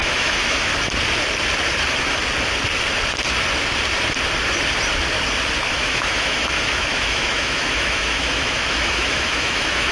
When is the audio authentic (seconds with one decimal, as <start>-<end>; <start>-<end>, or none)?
0.7-5.7